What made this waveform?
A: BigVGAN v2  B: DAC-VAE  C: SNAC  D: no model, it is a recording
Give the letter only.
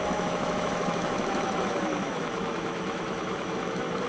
B